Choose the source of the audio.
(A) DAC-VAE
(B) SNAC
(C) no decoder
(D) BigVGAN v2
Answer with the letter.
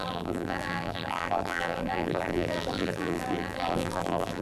D